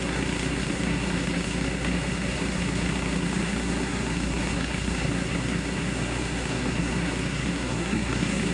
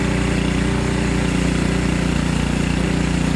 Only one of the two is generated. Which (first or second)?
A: first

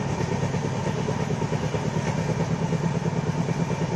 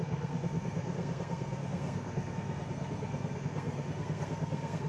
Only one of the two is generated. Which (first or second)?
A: second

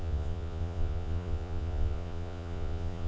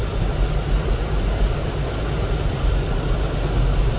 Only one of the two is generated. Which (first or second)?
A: first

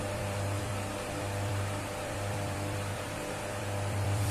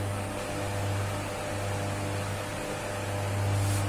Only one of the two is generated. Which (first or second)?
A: first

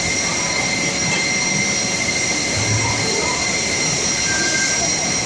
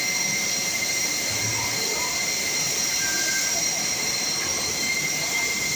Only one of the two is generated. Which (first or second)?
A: second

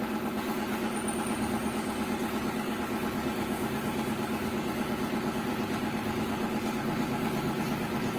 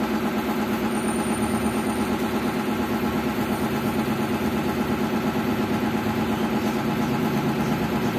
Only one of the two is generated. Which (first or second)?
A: first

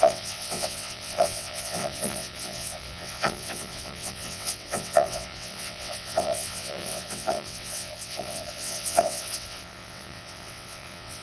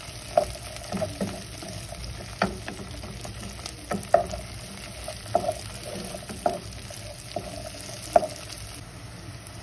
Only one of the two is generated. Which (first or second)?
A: first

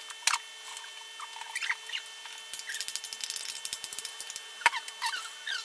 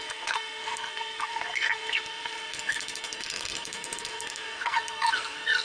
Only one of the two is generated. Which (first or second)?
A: second